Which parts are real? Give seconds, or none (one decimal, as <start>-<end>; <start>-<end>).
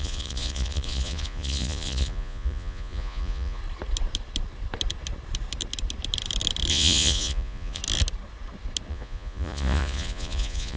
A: 3.6-6.7; 7.8-8.9